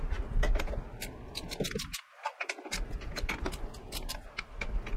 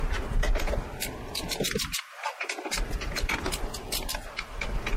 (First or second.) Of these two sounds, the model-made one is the second